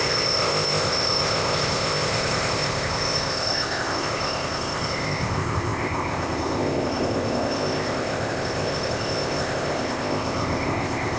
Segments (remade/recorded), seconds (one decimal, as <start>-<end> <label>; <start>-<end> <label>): 0.0-11.2 remade